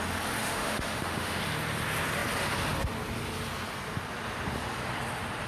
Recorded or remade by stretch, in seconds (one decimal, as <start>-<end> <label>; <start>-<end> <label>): 0.0-0.4 recorded; 0.4-1.4 remade; 1.4-5.5 recorded